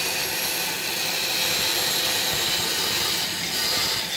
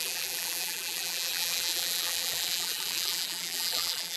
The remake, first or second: second